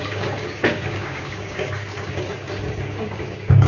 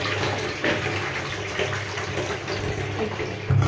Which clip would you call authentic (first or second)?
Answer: second